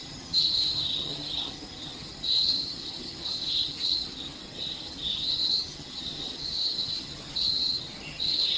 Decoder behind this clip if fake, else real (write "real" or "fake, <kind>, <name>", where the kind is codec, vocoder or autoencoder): fake, vocoder, HiFi-GAN